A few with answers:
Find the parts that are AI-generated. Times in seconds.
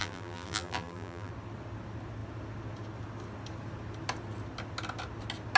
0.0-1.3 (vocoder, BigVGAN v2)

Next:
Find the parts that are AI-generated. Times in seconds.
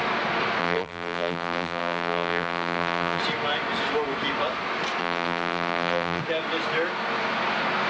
0.6-3.2 (vocoder, BigVGAN v2); 5.0-6.2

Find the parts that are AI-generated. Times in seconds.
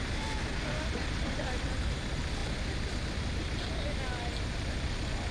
0.5-1.2 (vocoder, BigVGAN v2)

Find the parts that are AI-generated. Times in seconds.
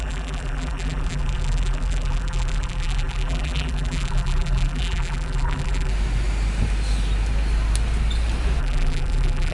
0.0-5.9 (vocoder, BigVGAN v2); 8.6-9.5